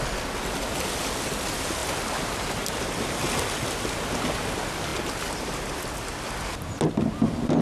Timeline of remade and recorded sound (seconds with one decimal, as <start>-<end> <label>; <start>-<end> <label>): 0.0-7.6 recorded

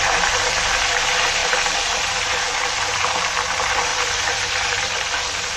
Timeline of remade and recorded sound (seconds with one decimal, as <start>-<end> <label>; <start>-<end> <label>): 0.0-1.4 recorded; 1.4-3.2 remade; 3.2-3.9 recorded; 3.9-4.9 remade; 4.9-5.6 recorded

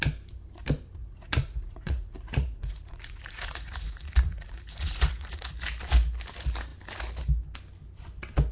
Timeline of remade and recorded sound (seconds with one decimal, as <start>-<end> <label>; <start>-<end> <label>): 0.0-1.0 recorded; 1.0-5.5 remade; 5.5-8.5 recorded

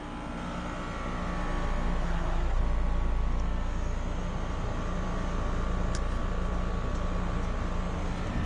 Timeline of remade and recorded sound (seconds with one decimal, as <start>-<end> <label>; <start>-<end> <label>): 0.0-2.0 recorded; 2.0-2.6 remade; 2.6-8.5 recorded